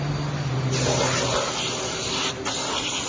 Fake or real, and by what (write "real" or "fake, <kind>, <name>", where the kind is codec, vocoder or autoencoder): real